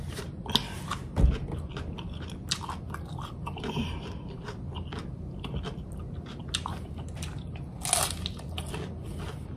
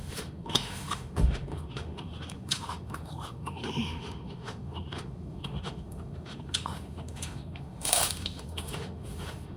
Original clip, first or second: first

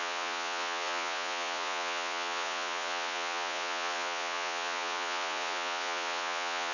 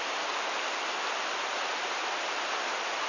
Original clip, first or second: second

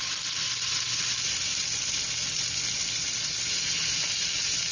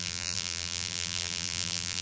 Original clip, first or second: first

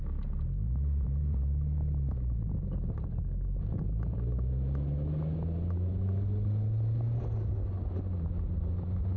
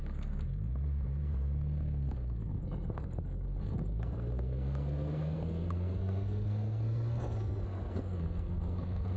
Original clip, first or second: first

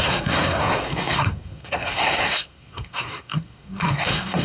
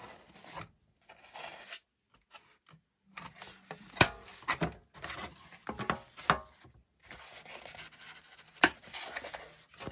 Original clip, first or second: second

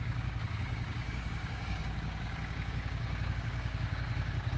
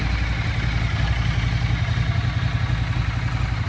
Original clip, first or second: second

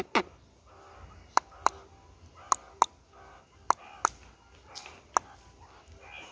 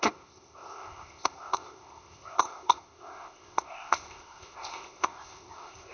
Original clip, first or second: first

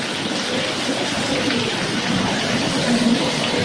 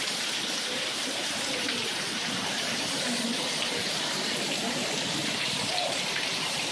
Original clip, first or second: first